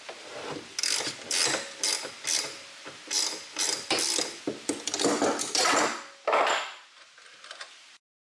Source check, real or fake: real